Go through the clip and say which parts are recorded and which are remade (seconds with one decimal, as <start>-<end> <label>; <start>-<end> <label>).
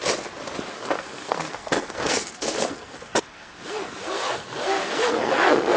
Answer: 0.0-0.7 recorded; 0.7-5.8 remade